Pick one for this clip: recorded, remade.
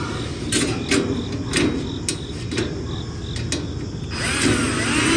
recorded